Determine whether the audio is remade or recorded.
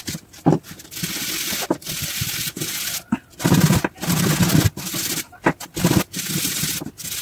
recorded